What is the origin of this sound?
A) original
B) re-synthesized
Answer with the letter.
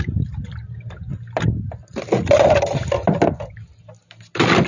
A